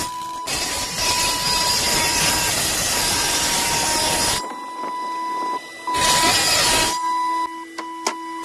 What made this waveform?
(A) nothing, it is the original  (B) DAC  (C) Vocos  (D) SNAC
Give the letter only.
A